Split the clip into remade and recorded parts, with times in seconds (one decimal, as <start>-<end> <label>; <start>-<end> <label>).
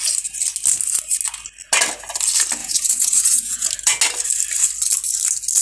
0.0-2.6 recorded; 2.6-3.7 remade; 3.7-5.6 recorded